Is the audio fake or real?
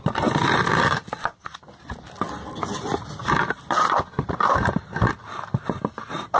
real